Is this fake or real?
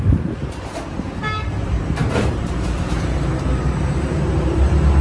fake